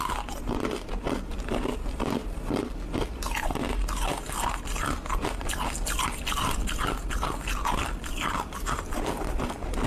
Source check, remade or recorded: recorded